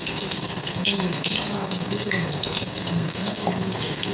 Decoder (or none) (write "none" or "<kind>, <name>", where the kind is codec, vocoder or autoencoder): codec, SNAC